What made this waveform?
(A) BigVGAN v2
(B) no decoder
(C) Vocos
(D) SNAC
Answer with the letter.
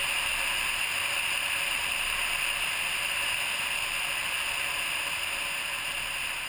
A